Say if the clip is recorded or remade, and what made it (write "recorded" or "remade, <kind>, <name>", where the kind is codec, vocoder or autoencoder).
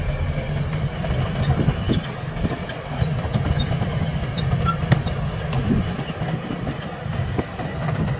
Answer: recorded